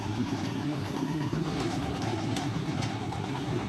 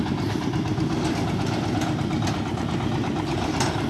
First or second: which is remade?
first